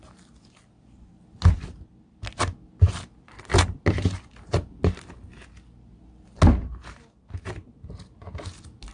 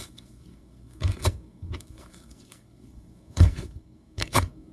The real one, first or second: first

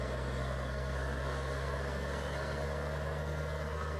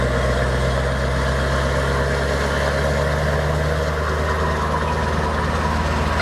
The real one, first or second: second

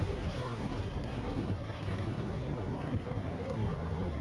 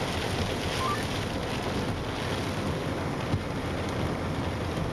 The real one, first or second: second